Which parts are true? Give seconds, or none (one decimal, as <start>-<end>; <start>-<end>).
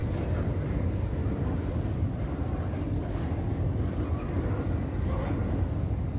0.0-6.2